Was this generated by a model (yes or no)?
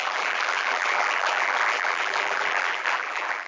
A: yes